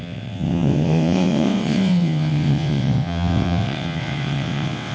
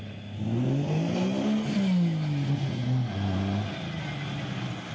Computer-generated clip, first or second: first